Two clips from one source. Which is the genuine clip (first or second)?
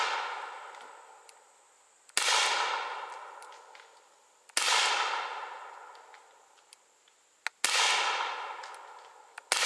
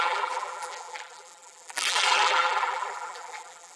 first